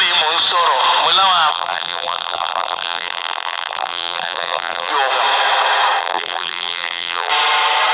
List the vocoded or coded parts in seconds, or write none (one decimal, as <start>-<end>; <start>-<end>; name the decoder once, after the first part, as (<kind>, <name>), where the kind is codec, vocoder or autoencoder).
1.5-4.9 (vocoder, BigVGAN v2); 6.0-7.3